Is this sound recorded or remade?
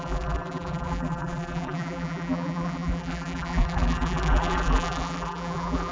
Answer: remade